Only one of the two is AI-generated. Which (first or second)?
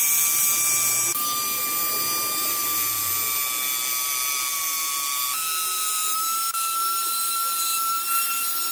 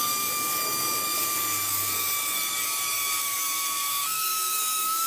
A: second